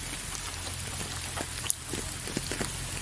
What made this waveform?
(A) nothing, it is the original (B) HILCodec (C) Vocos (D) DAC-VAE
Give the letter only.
A